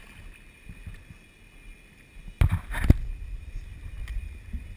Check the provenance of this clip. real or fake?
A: real